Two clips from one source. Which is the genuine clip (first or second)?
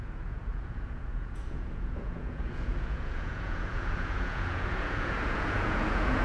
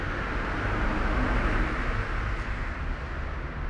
second